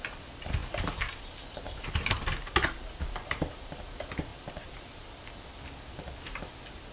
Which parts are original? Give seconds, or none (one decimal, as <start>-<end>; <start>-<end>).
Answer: 0.0-0.6; 3.8-4.3; 5.5-6.9